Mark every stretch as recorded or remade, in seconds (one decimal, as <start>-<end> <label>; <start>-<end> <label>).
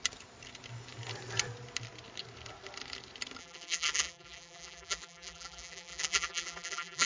0.0-3.4 recorded; 3.4-7.1 remade